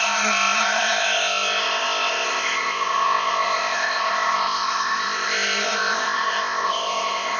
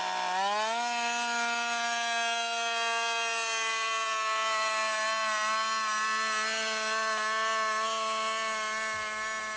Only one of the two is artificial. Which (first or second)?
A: first